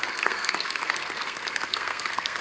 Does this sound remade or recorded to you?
remade